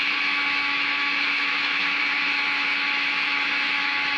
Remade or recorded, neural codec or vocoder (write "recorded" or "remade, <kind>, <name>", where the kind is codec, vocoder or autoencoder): remade, autoencoder, DAC-VAE